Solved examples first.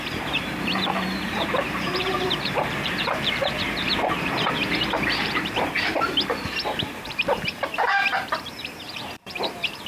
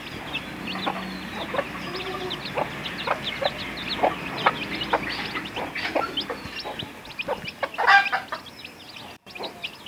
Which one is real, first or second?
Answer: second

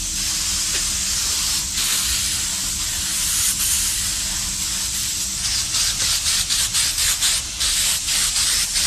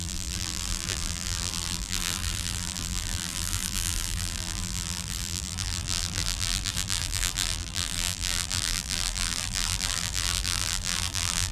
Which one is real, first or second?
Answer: first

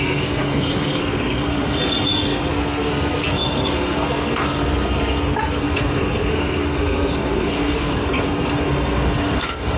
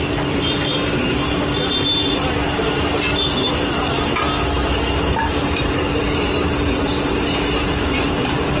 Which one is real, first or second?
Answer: second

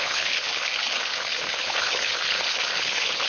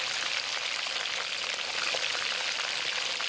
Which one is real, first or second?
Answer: second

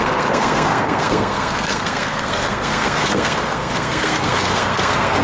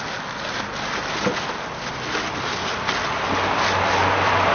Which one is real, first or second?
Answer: second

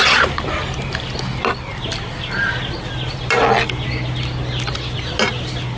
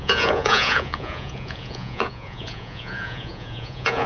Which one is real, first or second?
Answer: first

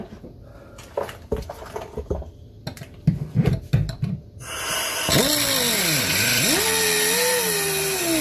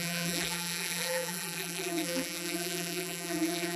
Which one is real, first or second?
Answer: first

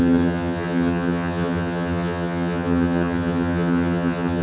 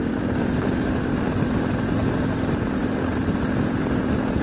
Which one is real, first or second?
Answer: second